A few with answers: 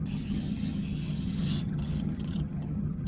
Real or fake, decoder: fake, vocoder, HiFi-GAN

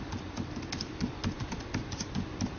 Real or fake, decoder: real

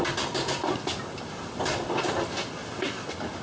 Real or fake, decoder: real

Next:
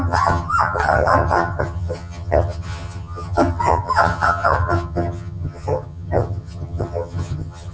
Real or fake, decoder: fake, vocoder, HiFi-GAN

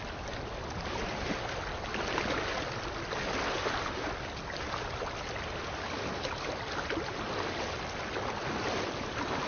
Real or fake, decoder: real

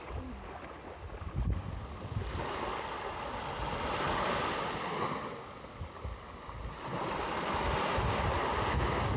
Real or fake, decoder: real